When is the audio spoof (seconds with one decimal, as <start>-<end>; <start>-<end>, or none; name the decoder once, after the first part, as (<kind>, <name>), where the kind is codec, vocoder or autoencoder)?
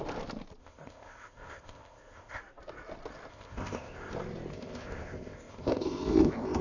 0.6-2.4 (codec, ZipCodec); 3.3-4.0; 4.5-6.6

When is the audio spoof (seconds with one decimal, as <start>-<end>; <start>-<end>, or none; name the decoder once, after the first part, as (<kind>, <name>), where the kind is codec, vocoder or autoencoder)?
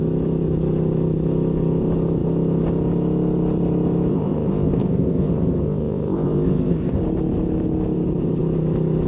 4.1-7.0 (codec, ZipCodec)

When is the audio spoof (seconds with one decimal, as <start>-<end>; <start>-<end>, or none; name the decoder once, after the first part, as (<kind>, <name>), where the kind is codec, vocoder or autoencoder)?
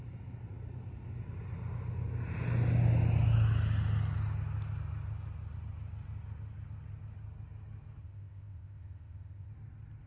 8.0-9.5 (codec, ZipCodec)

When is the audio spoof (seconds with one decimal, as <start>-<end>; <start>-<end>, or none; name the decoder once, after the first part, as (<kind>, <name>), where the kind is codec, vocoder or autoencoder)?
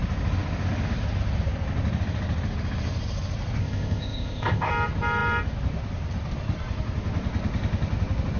3.6-4.7 (codec, ZipCodec)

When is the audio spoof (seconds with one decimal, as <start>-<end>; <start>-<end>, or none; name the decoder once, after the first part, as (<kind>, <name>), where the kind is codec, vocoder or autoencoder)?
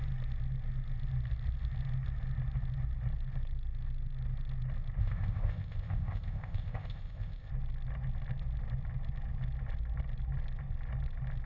5.0-7.5 (codec, ZipCodec)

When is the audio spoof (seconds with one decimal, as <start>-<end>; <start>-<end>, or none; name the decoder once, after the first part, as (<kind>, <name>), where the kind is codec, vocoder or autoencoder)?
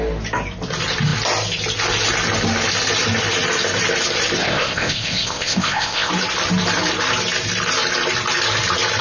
4.4-6.1 (codec, ZipCodec)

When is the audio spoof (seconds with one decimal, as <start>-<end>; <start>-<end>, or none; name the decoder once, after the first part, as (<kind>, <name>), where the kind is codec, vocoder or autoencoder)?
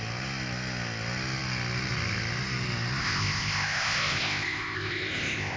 3.0-5.6 (codec, ZipCodec)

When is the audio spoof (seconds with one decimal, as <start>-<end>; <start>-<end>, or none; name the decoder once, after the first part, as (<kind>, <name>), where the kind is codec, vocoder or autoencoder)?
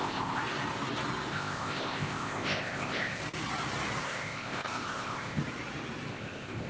0.0-0.4 (codec, ZipCodec); 1.3-3.2; 4.0-5.4; 6.1-6.7